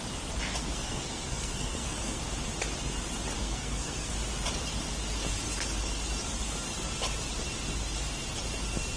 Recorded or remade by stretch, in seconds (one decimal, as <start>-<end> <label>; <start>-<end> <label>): 0.0-0.6 recorded; 0.6-2.2 remade; 2.2-3.4 recorded; 3.4-4.1 remade; 4.1-9.0 recorded